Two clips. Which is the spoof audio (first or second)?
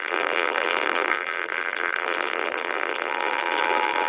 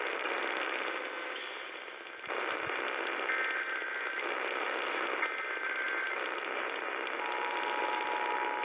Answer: first